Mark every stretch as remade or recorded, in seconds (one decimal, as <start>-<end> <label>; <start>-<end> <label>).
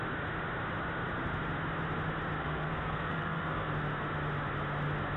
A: 0.0-2.4 recorded; 2.4-3.7 remade; 3.7-5.2 recorded